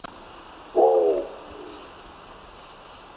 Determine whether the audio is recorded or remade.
recorded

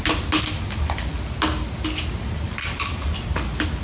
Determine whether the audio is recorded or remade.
recorded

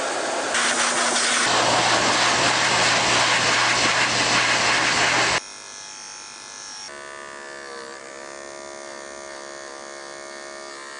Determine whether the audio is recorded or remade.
recorded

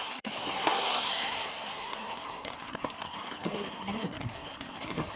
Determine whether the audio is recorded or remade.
remade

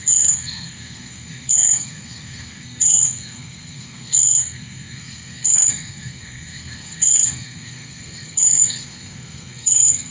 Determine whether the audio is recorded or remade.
remade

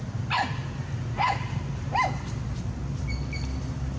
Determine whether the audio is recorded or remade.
recorded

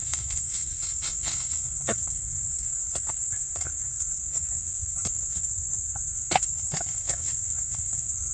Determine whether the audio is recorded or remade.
remade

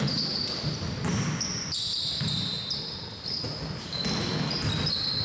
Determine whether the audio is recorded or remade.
recorded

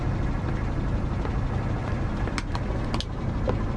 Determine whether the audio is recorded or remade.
recorded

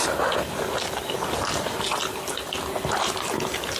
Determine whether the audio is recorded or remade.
recorded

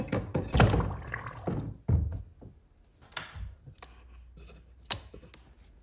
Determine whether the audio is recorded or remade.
recorded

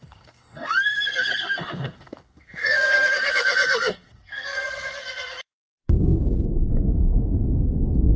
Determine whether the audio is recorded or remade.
remade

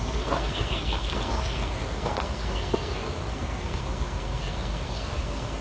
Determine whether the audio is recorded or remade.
remade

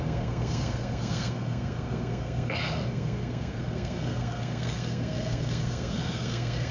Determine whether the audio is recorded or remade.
remade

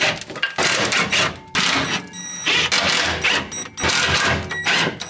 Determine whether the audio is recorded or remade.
recorded